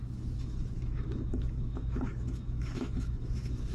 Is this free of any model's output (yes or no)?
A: no